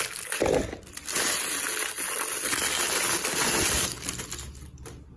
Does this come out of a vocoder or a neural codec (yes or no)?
no